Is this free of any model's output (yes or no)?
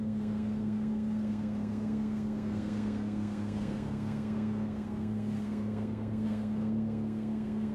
no